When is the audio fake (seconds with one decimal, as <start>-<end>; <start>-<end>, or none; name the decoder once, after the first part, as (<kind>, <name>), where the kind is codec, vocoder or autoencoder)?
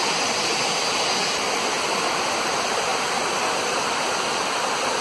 0.0-5.0 (vocoder, BigVGAN v2)